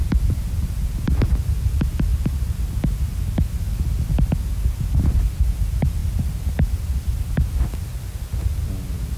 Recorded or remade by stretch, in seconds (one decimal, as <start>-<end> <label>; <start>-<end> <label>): 0.0-1.4 remade; 1.4-9.2 recorded